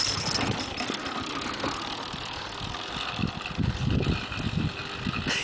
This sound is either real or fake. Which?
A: real